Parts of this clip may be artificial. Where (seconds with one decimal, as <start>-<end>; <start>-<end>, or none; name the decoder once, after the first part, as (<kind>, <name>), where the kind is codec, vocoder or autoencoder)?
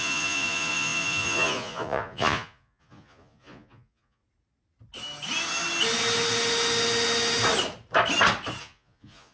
0.0-4.2 (vocoder, Vocos); 8.6-9.3